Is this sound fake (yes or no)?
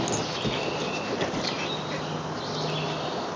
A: no